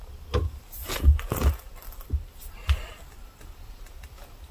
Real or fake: real